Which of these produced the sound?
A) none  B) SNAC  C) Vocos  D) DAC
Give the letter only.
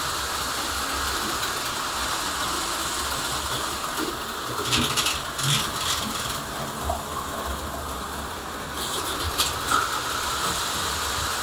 A